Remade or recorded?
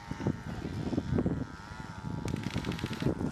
recorded